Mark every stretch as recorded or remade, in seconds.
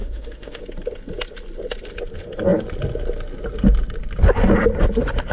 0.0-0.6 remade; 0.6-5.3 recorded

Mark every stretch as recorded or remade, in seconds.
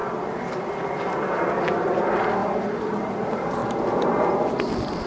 0.0-0.5 recorded; 0.5-3.6 remade; 3.6-4.5 recorded; 4.5-5.1 remade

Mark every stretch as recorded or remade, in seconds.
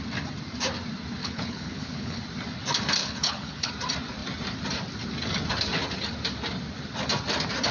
0.0-1.2 recorded; 1.2-2.2 remade; 2.2-3.0 recorded; 3.0-3.7 remade; 3.7-7.7 recorded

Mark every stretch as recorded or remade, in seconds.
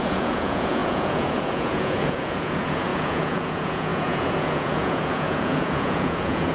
0.0-6.5 remade